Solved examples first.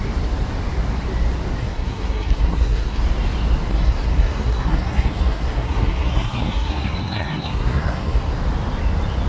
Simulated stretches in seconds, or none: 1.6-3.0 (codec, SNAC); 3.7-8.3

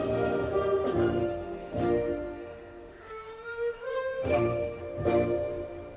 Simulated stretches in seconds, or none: 1.2-4.8 (autoencoder, DAC-VAE)

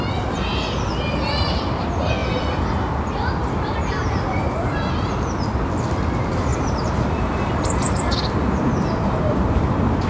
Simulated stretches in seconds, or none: 6.5-9.7 (vocoder, BigVGAN v2)